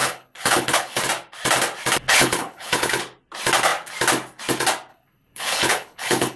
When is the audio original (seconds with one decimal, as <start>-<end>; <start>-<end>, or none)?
1.0-2.1; 3.0-4.9